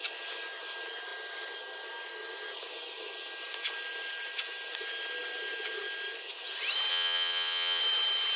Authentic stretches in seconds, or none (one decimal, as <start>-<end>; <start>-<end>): 0.0-6.9; 7.8-8.4